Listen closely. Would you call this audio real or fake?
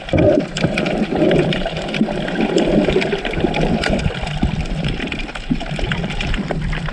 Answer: fake